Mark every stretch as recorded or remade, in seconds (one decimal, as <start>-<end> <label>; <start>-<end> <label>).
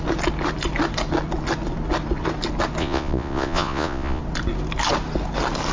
0.0-2.8 recorded; 2.8-4.2 remade; 4.2-5.7 recorded